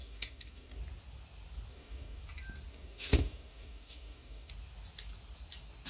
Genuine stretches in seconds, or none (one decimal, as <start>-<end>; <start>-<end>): 0.8-1.7; 2.2-2.7; 4.5-5.9